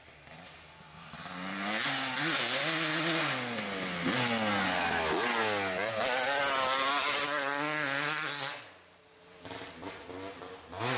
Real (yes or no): yes